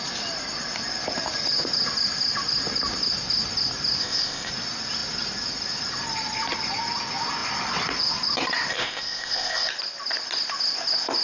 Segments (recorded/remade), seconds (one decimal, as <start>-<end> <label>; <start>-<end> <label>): 0.0-4.0 recorded; 4.0-4.5 remade; 4.5-8.7 recorded; 8.7-9.7 remade; 9.7-11.2 recorded